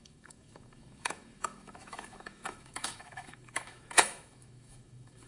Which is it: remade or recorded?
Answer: remade